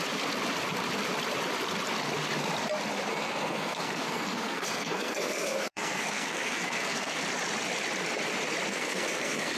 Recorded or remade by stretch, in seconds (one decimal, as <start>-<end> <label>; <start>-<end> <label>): 0.0-3.1 recorded; 3.1-7.2 remade; 7.2-8.7 recorded; 8.7-9.6 remade